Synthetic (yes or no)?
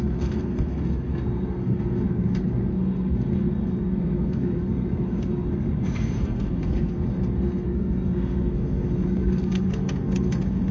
yes